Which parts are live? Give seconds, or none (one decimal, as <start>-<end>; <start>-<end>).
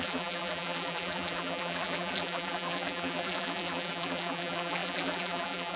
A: none